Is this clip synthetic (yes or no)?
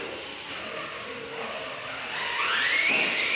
no